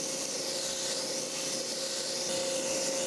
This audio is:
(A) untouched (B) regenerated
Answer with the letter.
A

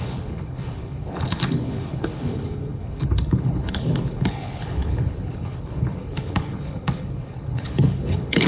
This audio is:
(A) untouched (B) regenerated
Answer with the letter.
B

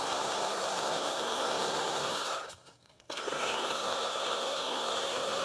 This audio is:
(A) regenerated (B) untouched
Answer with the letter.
A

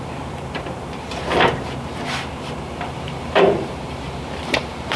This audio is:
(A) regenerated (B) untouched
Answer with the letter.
A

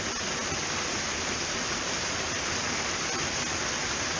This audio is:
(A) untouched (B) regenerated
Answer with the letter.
A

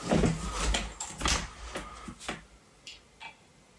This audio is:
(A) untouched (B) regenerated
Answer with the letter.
A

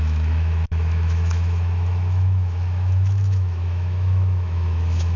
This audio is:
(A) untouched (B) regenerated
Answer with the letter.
B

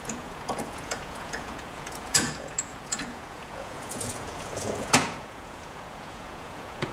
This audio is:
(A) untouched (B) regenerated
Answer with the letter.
B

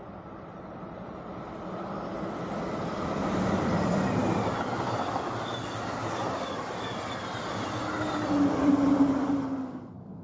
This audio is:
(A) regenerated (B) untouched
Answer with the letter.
B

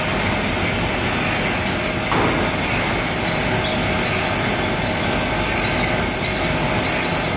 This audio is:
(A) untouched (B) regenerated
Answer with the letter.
A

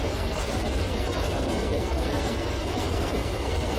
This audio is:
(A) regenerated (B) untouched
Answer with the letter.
A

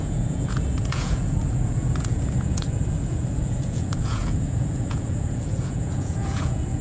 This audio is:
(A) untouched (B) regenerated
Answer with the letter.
B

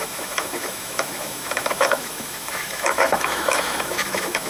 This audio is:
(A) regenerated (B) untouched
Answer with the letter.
A